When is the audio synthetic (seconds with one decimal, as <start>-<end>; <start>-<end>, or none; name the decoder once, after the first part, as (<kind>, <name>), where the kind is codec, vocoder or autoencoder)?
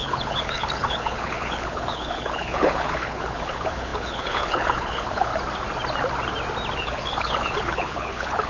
0.0-5.3 (codec, HILCodec); 6.8-8.5